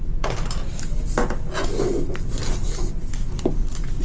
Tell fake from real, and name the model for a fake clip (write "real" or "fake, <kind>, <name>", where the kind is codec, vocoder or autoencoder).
real